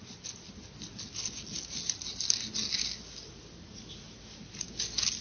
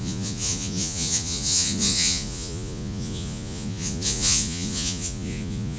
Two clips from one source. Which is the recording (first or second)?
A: first